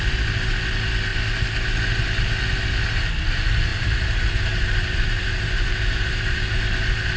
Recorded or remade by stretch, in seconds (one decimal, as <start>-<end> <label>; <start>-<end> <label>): 0.0-3.7 recorded; 3.7-6.6 remade; 6.6-7.2 recorded